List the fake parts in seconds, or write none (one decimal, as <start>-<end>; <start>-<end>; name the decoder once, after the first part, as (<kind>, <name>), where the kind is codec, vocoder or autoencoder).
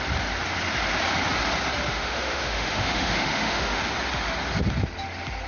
1.9-3.8 (autoencoder, DAC-VAE)